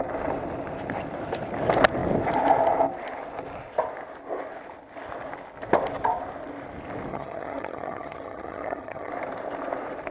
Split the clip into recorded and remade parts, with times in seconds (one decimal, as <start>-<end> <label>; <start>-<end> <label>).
0.0-7.1 recorded; 7.1-9.1 remade; 9.1-10.1 recorded